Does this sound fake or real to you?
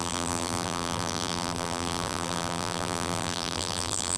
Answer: fake